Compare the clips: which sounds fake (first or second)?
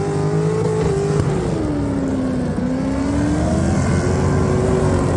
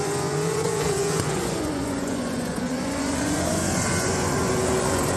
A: second